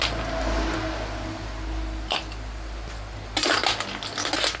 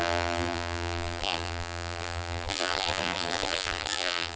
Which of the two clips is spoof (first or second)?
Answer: second